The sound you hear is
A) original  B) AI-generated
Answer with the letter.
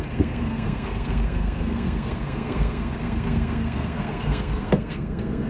B